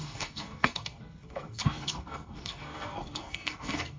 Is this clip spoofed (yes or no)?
yes